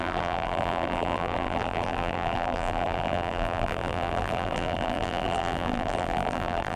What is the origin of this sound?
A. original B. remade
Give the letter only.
B